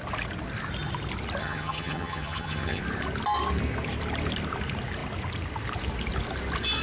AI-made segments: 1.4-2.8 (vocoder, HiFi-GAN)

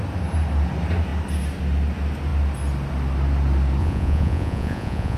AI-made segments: 3.8-5.2 (vocoder, Vocos)

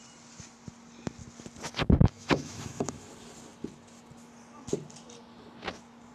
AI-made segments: 2.0-3.1 (autoencoder, DAC-VAE)